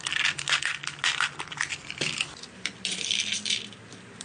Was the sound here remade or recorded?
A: recorded